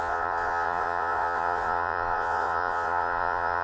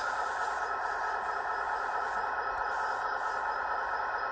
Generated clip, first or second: first